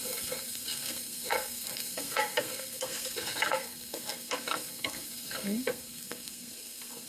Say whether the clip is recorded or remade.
remade